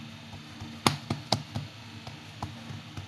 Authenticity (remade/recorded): recorded